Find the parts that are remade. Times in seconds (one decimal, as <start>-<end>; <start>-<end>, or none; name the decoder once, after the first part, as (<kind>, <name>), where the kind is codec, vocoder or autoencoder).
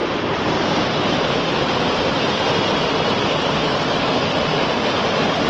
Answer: 3.2-4.3 (codec, DAC)